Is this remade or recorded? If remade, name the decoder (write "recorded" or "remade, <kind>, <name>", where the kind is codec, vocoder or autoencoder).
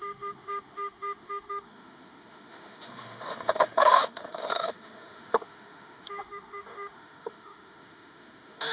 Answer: remade, autoencoder, DAC-VAE